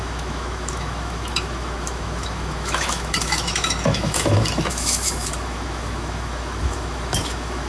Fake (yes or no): yes